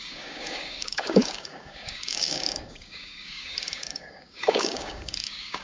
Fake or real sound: fake